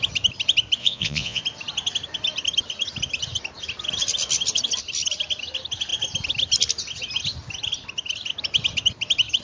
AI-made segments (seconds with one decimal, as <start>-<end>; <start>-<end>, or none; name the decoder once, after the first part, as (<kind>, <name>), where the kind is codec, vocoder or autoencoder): 0.8-1.4 (vocoder, Vocos)